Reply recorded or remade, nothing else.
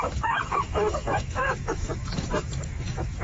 remade